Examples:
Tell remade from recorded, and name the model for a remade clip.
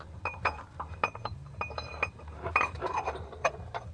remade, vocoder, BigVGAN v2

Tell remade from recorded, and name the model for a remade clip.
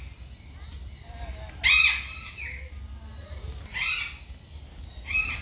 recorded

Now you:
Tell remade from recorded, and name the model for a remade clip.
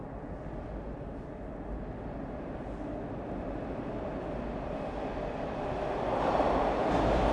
recorded